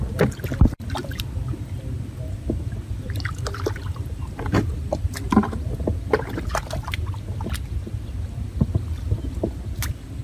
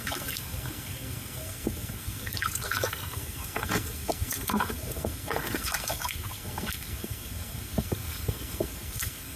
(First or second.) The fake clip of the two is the second